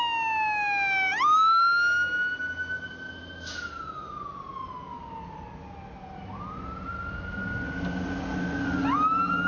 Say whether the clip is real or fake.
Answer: real